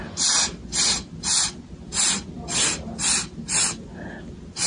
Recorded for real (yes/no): yes